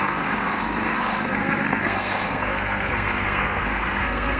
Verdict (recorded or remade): remade